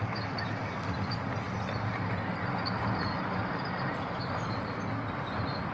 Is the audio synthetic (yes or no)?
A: no